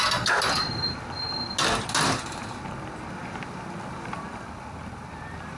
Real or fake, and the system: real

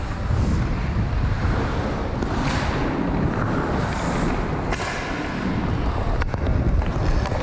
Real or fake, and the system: real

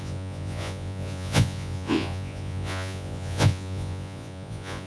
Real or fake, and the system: fake, vocoder, Vocos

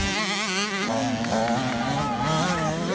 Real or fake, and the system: real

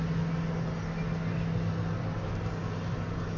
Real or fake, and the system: real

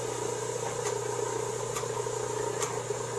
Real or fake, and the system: real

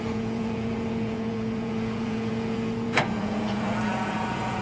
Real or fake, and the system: fake, vocoder, Vocos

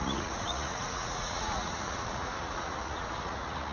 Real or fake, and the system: fake, vocoder, Vocos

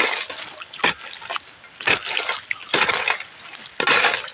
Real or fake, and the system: real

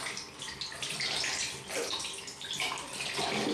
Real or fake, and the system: real